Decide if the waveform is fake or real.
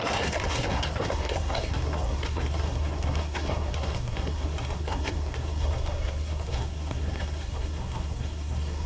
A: fake